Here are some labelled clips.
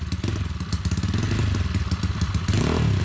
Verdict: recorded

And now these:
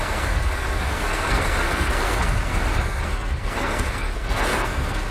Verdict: remade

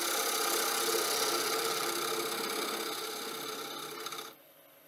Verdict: recorded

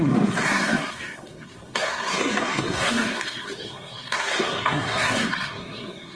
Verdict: remade